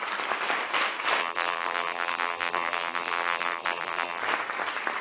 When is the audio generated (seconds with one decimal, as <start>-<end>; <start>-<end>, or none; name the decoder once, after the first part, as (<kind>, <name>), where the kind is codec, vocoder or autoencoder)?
1.2-4.2 (vocoder, BigVGAN v2)